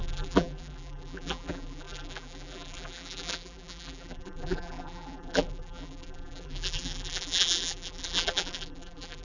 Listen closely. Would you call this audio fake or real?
fake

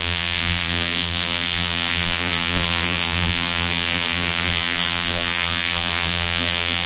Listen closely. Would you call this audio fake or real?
fake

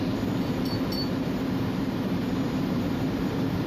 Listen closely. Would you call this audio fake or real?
real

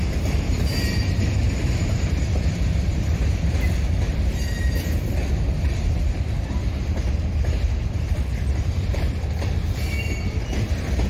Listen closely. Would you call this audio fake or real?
fake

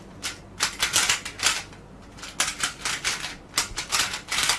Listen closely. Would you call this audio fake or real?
real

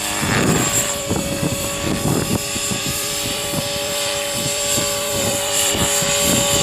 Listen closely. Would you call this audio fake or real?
fake